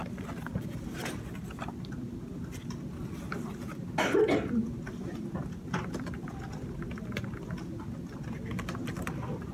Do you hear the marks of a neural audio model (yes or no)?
no